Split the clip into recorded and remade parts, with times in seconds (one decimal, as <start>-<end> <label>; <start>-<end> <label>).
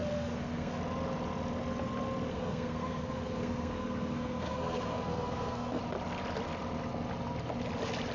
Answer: 0.0-0.8 remade; 0.8-2.3 recorded; 2.3-5.8 remade; 5.8-8.1 recorded